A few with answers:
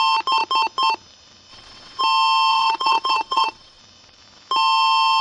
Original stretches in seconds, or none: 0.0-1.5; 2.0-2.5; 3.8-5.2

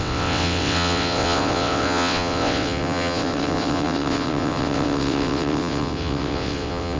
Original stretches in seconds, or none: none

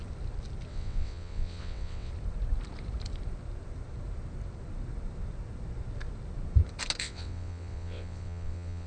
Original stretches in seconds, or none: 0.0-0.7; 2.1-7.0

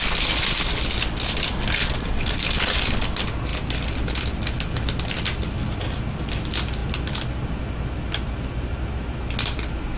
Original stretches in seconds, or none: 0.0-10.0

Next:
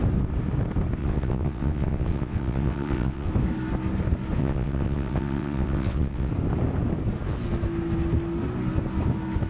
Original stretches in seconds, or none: 0.0-1.0; 3.3-4.4; 6.3-9.5

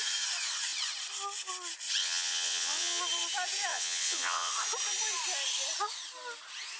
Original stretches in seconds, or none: 0.0-2.0; 3.0-3.7; 4.5-6.8

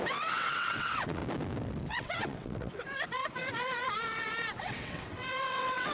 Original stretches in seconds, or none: 1.2-1.9

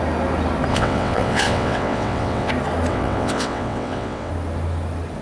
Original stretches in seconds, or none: 0.0-0.7; 2.5-2.9; 4.3-5.2